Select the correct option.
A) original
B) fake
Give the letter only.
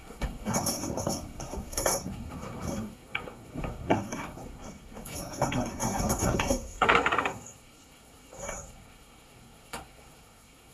B